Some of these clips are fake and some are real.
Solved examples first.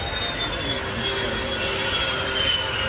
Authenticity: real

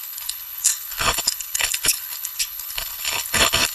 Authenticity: fake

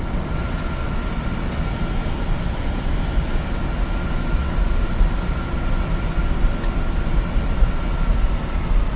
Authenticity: real